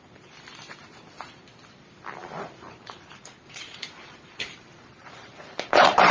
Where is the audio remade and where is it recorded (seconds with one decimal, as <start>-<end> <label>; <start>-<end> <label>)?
0.0-2.2 recorded; 2.2-6.1 remade